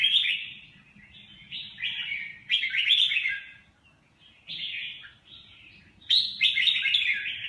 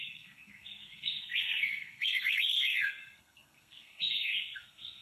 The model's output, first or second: second